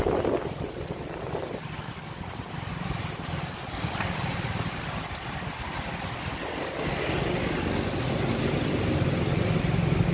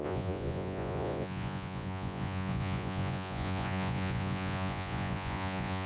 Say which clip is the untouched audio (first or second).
first